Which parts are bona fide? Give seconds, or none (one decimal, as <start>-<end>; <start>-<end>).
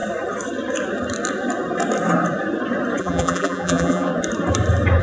0.0-3.0; 4.1-5.0